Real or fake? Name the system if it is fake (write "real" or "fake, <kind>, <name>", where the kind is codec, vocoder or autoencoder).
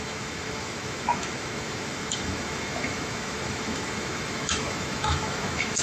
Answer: fake, autoencoder, DAC-VAE